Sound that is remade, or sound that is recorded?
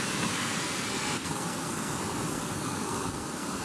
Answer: remade